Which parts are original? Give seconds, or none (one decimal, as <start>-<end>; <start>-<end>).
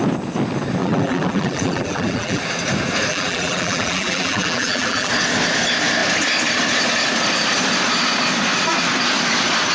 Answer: 0.0-0.8; 2.4-3.1; 5.1-9.7